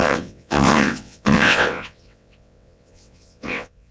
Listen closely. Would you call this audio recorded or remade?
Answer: remade